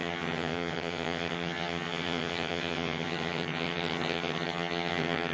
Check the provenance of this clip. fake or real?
fake